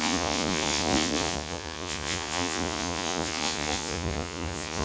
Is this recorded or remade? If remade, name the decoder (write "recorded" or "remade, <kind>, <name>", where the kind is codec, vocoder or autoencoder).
remade, vocoder, Vocos